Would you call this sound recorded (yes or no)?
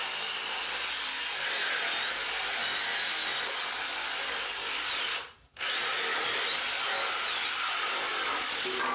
yes